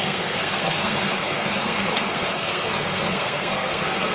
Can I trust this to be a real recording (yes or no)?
no